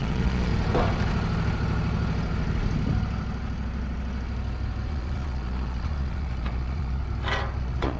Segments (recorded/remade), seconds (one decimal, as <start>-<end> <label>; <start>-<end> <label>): 0.0-0.5 remade; 0.5-4.9 recorded; 4.9-7.0 remade; 7.0-7.6 recorded; 7.6-8.0 remade

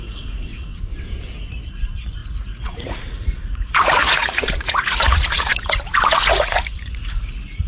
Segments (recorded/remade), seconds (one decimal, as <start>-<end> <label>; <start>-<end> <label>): 0.0-0.7 remade; 0.7-1.4 recorded; 1.4-7.7 remade

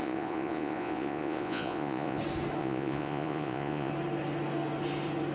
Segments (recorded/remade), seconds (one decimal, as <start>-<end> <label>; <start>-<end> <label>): 0.0-2.2 remade; 2.2-2.6 recorded; 2.6-3.9 remade; 3.9-5.3 recorded

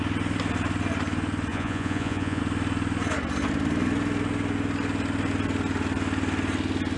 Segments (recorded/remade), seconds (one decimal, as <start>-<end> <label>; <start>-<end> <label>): 0.0-1.5 recorded; 1.5-2.4 remade; 2.4-7.0 recorded